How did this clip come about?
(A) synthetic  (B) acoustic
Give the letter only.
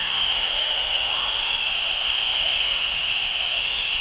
A